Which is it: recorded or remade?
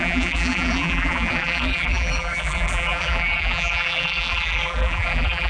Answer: remade